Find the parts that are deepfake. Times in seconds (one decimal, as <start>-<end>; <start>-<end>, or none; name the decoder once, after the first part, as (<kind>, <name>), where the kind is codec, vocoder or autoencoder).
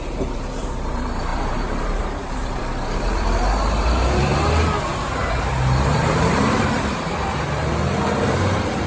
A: 0.0-4.3 (vocoder, BigVGAN v2); 5.4-8.9